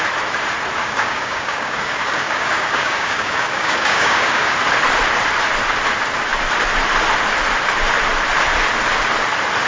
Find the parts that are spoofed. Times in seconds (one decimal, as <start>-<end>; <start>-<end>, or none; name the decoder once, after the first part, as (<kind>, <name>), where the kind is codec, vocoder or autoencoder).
0.8-4.5 (codec, DAC)